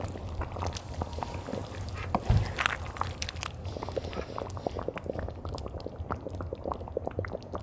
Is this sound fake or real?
real